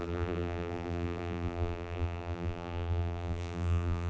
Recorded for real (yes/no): no